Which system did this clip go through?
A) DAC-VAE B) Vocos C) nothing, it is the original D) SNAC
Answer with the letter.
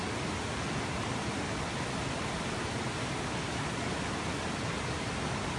C